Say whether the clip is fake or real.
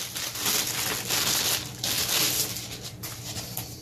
real